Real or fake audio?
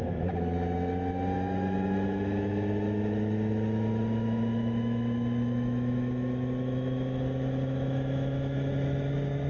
fake